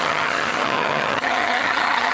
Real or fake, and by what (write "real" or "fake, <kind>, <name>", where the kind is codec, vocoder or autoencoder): fake, vocoder, HiFi-GAN